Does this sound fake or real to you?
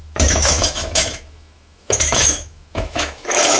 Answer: fake